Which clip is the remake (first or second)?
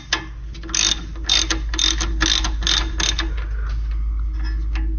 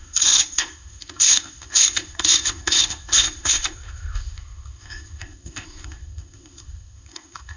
second